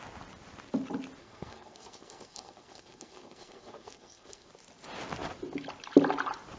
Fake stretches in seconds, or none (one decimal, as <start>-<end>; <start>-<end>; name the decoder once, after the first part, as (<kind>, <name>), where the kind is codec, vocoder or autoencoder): 1.2-4.5 (codec, SNAC)

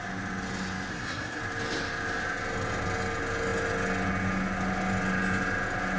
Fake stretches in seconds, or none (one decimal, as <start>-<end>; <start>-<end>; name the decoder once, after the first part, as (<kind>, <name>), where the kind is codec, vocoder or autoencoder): 0.9-1.4 (codec, SNAC)

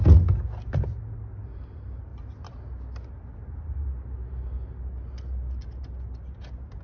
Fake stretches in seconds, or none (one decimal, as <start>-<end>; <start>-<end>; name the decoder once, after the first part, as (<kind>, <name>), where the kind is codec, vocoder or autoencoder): none